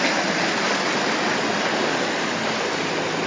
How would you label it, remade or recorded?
recorded